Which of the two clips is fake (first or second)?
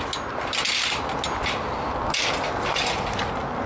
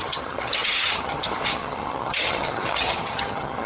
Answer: second